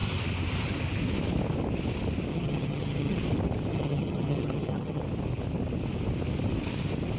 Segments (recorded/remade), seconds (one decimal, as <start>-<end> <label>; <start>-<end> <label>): 0.0-2.3 recorded; 2.3-3.2 remade; 3.2-3.7 recorded; 3.7-5.0 remade; 5.0-7.2 recorded